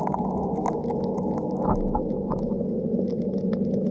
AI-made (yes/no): yes